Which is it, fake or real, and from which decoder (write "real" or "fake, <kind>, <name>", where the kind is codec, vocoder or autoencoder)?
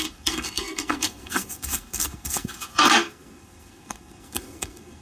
fake, codec, SNAC